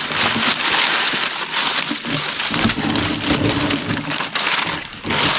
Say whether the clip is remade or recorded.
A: recorded